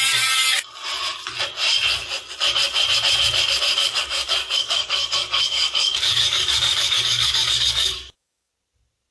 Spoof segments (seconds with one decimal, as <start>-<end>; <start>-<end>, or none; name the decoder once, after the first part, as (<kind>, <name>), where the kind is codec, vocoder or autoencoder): 3.8-8.5 (codec, DAC)

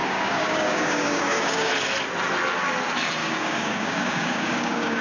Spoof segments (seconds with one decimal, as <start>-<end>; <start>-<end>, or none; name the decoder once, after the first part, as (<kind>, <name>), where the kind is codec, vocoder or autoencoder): 0.0-1.7 (codec, DAC); 3.2-5.0